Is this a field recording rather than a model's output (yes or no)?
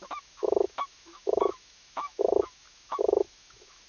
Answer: no